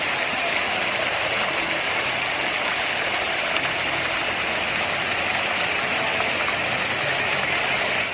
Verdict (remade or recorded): recorded